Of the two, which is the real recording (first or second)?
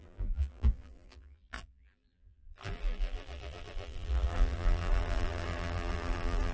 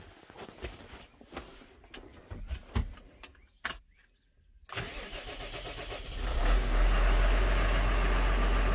second